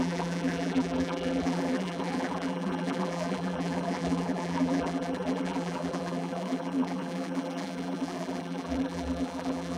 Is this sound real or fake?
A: fake